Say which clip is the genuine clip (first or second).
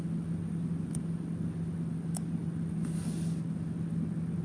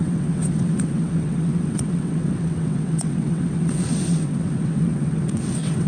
first